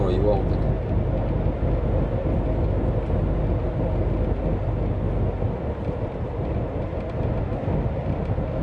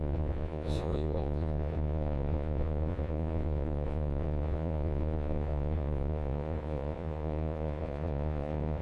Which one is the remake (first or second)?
second